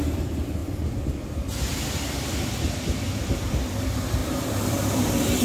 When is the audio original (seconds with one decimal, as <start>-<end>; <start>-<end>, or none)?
0.6-3.4